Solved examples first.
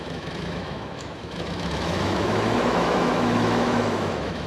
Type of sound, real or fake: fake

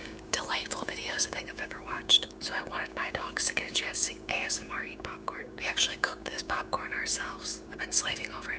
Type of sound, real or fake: fake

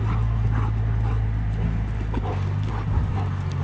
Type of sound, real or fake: real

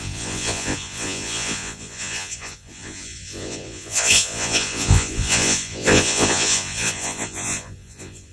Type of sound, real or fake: fake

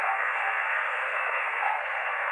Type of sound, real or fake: fake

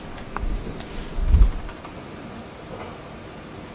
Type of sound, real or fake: real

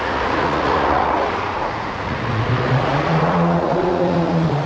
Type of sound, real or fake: fake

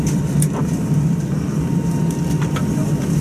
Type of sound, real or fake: real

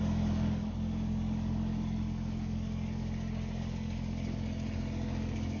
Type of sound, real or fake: fake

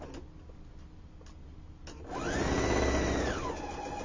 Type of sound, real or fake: real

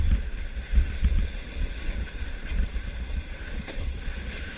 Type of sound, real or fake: fake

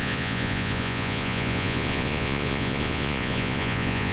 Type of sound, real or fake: fake